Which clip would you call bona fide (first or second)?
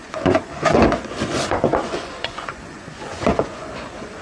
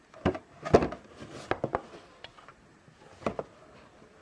second